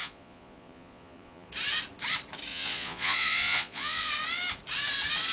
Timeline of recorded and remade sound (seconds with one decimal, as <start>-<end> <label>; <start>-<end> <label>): 0.0-1.5 remade; 1.5-2.5 recorded; 2.5-4.1 remade; 4.1-5.3 recorded